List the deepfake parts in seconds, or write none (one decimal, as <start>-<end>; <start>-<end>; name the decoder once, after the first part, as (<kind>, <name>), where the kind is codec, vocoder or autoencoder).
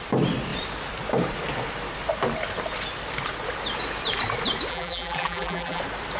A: 4.7-5.8 (vocoder, BigVGAN v2)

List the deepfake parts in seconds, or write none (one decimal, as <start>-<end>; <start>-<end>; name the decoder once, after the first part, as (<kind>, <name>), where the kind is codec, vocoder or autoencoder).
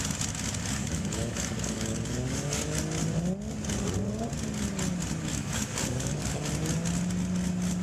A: 0.8-2.8 (codec, DAC); 5.3-6.5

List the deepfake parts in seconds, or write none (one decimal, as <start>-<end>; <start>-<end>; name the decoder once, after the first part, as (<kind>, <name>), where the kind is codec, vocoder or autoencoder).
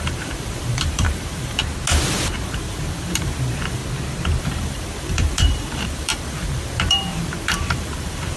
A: 0.0-1.6 (vocoder, BigVGAN v2); 2.4-3.8; 4.4-8.4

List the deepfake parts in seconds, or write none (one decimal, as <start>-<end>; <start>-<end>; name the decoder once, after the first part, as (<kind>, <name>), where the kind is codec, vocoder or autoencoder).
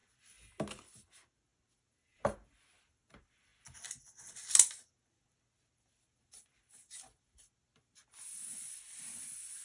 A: none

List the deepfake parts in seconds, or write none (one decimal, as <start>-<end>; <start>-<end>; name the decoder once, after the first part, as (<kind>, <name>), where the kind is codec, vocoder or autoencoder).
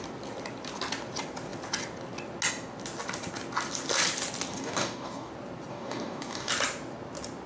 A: 4.5-5.3 (codec, DAC); 5.7-6.5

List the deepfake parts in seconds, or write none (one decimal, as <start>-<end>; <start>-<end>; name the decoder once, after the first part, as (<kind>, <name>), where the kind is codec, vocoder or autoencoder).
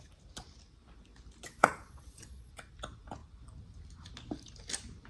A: 1.5-2.5 (vocoder, Vocos)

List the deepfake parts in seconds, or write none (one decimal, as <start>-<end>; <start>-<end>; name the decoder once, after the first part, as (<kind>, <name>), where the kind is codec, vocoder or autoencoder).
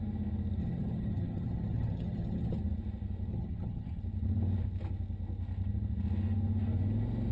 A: 0.6-2.6 (vocoder, HiFi-GAN); 3.3-4.0